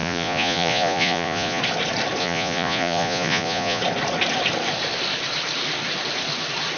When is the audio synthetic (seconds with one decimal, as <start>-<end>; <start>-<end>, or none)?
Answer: 0.0-1.6; 2.2-3.8